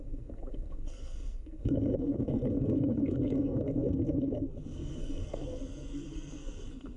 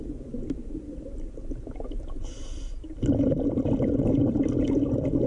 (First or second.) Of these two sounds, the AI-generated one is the first